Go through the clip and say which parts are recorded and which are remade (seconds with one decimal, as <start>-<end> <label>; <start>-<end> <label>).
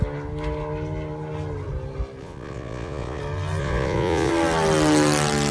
0.0-2.2 recorded; 2.2-3.2 remade; 3.2-3.6 recorded; 3.6-4.3 remade; 4.3-5.5 recorded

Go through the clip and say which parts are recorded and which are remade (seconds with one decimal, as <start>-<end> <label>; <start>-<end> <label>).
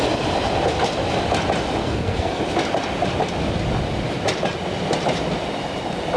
0.0-1.8 recorded; 1.8-2.4 remade; 2.4-6.2 recorded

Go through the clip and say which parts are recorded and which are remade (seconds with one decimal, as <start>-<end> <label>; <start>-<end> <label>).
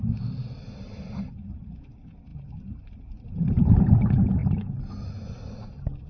0.0-6.1 recorded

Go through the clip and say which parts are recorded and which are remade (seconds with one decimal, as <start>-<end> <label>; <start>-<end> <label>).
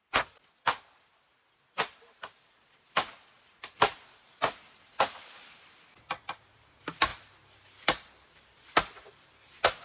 0.0-9.8 recorded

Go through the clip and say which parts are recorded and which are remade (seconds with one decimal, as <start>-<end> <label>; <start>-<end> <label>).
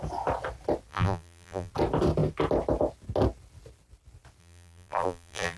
0.0-0.9 recorded; 0.9-1.7 remade; 1.7-4.4 recorded; 4.4-5.6 remade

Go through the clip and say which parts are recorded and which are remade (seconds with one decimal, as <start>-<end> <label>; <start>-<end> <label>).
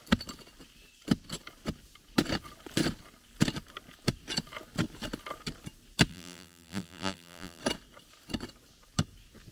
0.0-6.1 recorded; 6.1-7.6 remade; 7.6-9.5 recorded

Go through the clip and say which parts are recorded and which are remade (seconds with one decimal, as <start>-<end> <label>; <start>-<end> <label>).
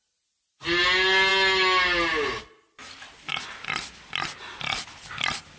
0.0-5.6 recorded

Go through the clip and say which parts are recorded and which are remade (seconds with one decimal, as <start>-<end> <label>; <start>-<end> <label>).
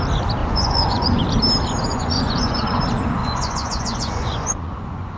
0.0-0.4 recorded; 0.4-1.2 remade; 1.2-1.9 recorded; 1.9-2.8 remade; 2.8-3.2 recorded; 3.2-5.2 remade